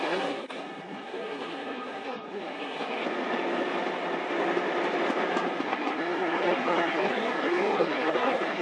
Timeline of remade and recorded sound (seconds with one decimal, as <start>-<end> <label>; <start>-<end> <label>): 0.0-3.0 remade; 3.0-5.6 recorded; 5.6-8.6 remade